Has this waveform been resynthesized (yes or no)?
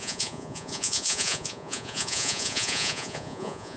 yes